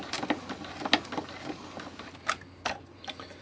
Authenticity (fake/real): real